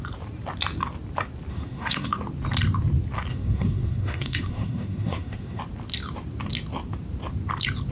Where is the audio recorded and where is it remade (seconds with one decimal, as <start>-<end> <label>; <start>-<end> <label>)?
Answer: 0.0-1.5 recorded; 1.5-2.1 remade; 2.1-3.3 recorded; 3.3-5.6 remade; 5.6-7.9 recorded